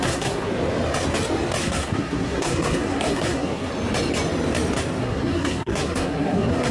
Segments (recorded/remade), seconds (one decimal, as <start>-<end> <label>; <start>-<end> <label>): 0.0-0.5 remade; 0.5-1.6 recorded; 1.6-3.7 remade; 3.7-5.0 recorded; 5.0-6.7 remade